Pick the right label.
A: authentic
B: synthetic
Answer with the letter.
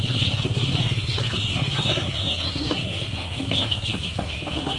B